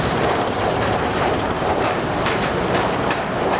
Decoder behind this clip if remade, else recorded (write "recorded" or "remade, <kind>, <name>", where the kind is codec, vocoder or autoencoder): remade, vocoder, BigVGAN v2